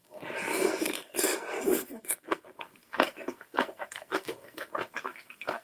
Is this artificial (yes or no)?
yes